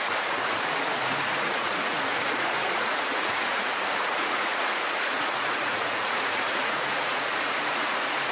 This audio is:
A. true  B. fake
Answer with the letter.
B